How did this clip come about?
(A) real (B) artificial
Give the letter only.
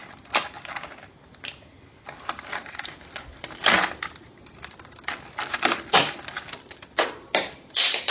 A